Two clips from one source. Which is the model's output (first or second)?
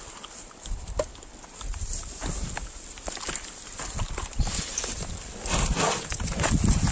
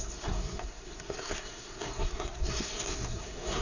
second